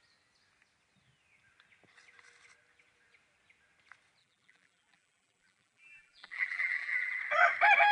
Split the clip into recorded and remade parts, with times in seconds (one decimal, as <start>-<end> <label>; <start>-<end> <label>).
0.0-4.2 recorded; 4.2-7.2 remade; 7.2-7.9 recorded